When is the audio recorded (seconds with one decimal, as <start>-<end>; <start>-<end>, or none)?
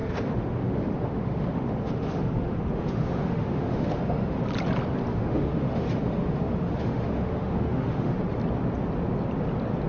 4.4-5.1; 8.2-9.9